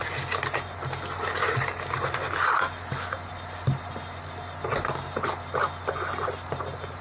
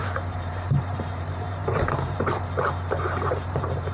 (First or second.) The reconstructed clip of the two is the second